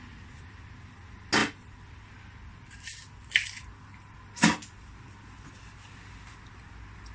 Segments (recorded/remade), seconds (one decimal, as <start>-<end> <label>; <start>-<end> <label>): 0.0-7.1 recorded